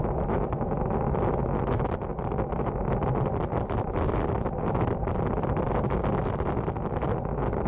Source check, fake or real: real